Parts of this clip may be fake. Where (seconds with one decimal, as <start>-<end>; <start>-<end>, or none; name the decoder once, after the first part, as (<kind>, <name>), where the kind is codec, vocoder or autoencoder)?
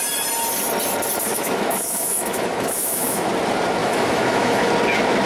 1.3-3.3 (autoencoder, DAC-VAE); 3.8-4.7